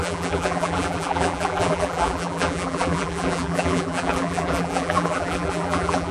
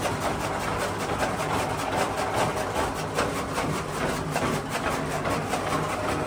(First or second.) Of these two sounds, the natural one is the second